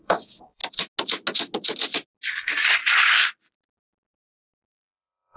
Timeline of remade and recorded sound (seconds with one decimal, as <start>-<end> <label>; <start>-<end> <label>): 0.0-0.6 remade; 0.6-2.3 recorded; 2.3-2.8 remade; 2.8-4.7 recorded; 4.7-5.4 remade